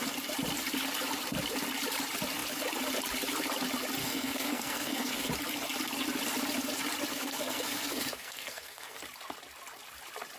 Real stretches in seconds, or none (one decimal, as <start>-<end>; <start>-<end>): 0.0-4.0; 5.3-7.1; 9.0-10.4